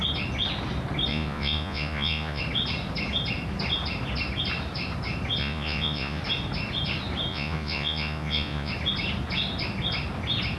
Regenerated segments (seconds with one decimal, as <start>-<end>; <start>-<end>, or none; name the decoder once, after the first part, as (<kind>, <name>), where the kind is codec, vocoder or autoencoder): 1.1-2.4 (vocoder, Vocos); 5.4-6.2; 7.3-8.7